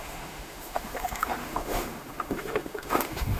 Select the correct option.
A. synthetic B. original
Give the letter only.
A